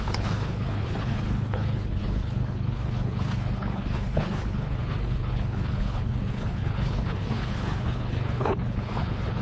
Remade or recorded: remade